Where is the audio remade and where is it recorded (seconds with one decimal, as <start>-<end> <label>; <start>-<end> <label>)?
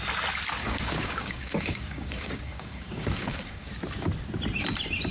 0.0-0.6 recorded; 0.6-3.7 remade; 3.7-5.1 recorded